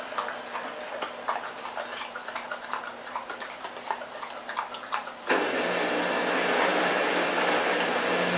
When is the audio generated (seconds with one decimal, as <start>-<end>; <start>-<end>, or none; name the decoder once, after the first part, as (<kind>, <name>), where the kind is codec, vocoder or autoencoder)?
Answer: 1.9-3.6 (vocoder, BigVGAN v2); 6.7-7.3